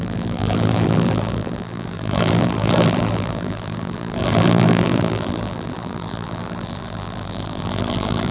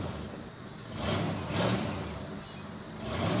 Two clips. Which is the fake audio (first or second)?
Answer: first